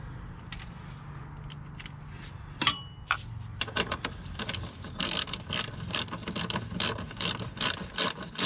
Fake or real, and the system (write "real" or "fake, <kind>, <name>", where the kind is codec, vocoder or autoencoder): real